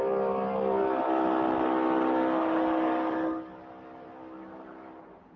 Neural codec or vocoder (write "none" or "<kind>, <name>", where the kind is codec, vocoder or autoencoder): none